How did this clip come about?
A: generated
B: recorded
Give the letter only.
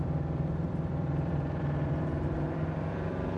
A